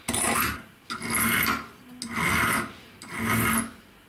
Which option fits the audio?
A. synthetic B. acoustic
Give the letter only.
B